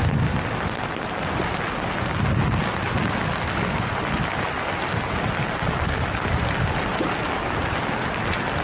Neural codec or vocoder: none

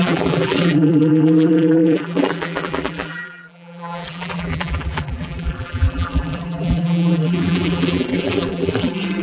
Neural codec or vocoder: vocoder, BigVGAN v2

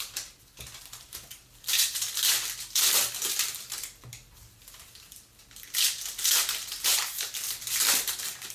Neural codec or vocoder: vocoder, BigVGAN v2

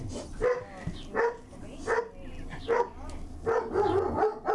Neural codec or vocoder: none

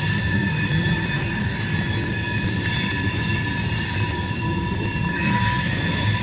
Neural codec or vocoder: vocoder, BigVGAN v2